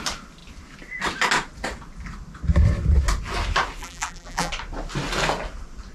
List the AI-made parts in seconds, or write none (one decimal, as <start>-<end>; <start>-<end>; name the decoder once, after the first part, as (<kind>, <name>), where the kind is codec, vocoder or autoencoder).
3.8-4.5 (vocoder, BigVGAN v2)